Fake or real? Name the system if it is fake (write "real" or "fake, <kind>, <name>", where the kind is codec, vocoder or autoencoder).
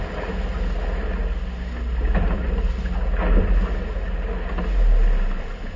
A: real